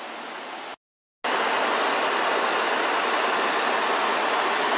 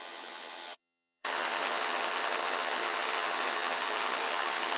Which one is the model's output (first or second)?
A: second